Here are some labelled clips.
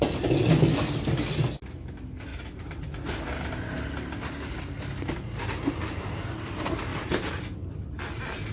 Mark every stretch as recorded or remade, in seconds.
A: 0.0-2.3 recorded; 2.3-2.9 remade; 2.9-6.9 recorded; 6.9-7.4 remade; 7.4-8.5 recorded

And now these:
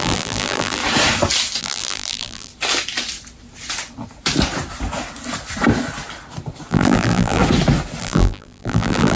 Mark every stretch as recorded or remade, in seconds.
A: 0.0-0.8 remade; 0.8-1.6 recorded; 1.6-2.5 remade; 2.5-6.7 recorded; 6.7-7.4 remade; 7.4-8.0 recorded; 8.0-9.2 remade

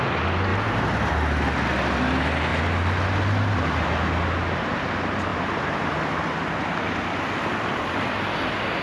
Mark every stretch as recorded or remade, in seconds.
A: 0.0-8.8 recorded

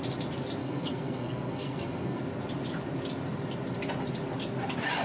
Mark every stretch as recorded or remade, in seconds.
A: 0.0-0.6 recorded; 0.6-2.2 remade; 2.2-5.0 recorded